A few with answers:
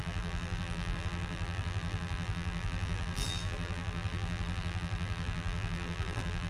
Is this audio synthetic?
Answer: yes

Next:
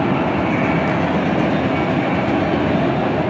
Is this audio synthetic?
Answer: no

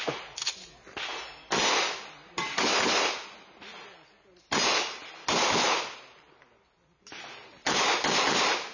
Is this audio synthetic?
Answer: no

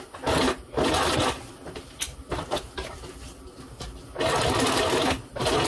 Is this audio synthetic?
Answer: yes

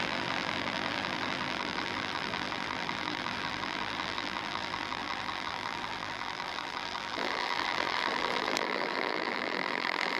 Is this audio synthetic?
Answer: yes